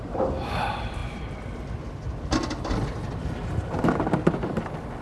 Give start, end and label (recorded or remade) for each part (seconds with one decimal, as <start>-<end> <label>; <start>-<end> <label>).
0.0-5.0 recorded